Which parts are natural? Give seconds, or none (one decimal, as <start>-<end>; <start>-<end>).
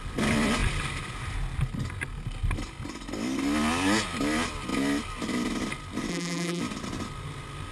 0.0-6.1; 6.6-7.7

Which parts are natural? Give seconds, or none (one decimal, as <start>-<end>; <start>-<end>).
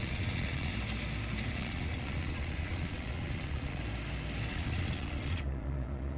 0.7-1.5; 3.8-4.5